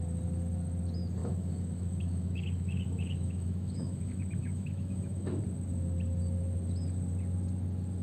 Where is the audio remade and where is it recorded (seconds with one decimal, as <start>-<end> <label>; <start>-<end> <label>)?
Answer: 0.0-1.2 recorded; 1.2-5.4 remade; 5.4-8.0 recorded